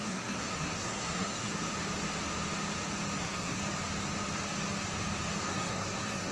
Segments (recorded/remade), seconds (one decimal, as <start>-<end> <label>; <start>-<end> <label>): 0.0-1.5 remade; 1.5-3.2 recorded; 3.2-3.6 remade; 3.6-5.4 recorded; 5.4-6.3 remade